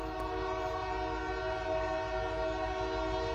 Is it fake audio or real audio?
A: real